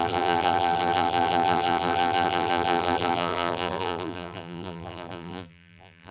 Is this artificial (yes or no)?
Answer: yes